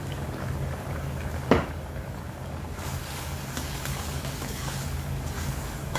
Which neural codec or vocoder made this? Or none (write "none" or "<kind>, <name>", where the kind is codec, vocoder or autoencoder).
codec, DAC